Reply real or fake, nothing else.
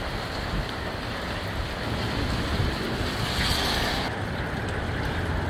real